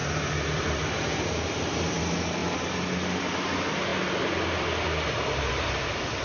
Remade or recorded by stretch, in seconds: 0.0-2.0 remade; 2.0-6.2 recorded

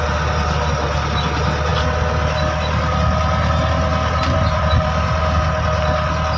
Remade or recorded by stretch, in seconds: 0.0-3.9 recorded; 3.9-5.2 remade; 5.2-6.4 recorded

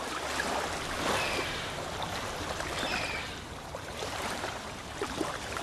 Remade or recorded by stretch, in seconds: 0.0-3.2 recorded; 3.2-5.6 remade

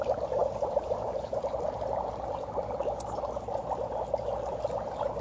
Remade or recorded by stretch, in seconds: 0.0-0.4 recorded; 0.4-2.9 remade; 2.9-5.2 recorded

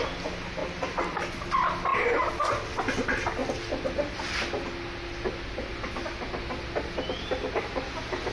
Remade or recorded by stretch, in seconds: 0.0-0.6 recorded; 0.6-1.2 remade; 1.2-8.3 recorded

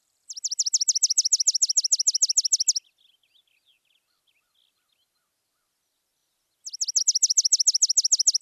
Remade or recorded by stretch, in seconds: 0.0-8.4 recorded

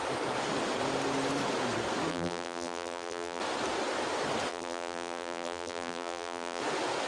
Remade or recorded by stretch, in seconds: 0.0-2.1 recorded; 2.1-3.4 remade; 3.4-4.5 recorded; 4.5-6.6 remade; 6.6-7.1 recorded

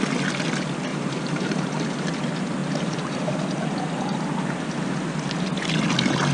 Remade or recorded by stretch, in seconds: 0.0-0.9 recorded; 0.9-1.7 remade; 1.7-2.6 recorded; 2.6-3.3 remade; 3.3-6.3 recorded